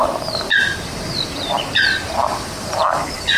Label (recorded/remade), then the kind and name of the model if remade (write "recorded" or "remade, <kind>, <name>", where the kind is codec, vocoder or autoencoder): recorded